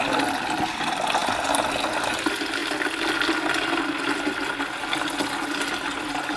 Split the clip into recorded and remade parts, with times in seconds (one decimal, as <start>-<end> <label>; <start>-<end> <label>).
0.0-6.4 recorded